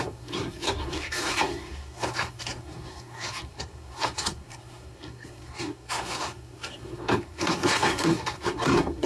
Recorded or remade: remade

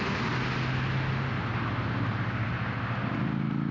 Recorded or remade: recorded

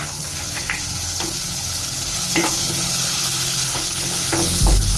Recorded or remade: remade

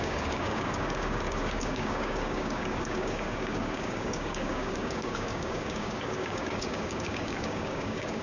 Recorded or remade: remade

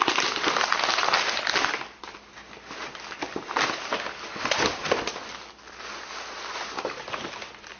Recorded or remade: recorded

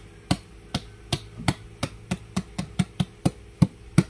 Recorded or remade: recorded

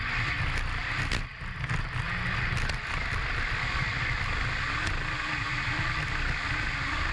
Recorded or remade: recorded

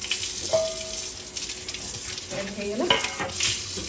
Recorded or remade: recorded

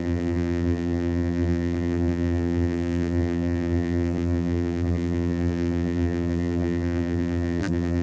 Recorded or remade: remade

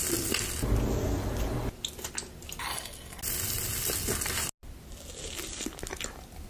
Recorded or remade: recorded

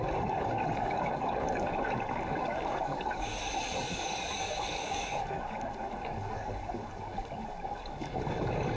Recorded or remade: remade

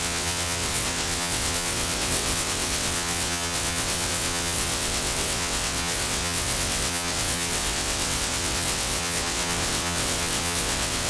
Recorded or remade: remade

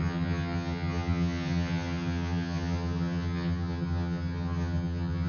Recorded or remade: remade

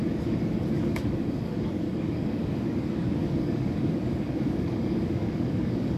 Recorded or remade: remade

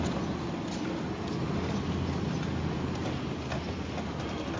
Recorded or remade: recorded